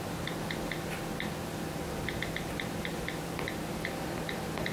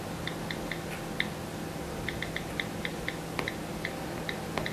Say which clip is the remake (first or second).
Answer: first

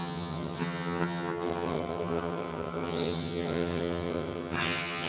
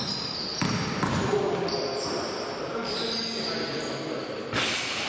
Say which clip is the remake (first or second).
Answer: first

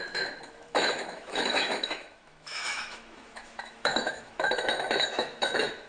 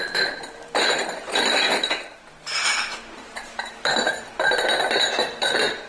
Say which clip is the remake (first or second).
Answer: first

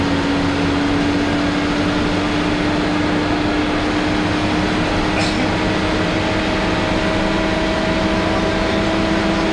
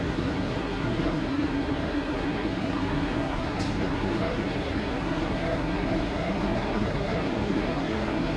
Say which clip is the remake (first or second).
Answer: second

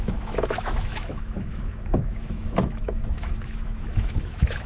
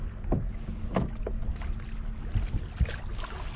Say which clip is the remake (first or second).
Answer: first